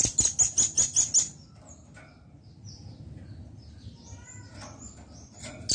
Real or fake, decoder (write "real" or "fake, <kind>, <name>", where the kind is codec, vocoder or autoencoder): real